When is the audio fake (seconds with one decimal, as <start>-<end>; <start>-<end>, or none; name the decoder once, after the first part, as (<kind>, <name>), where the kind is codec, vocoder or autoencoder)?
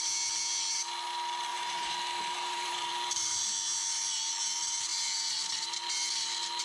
1.5-3.5 (vocoder, BigVGAN v2)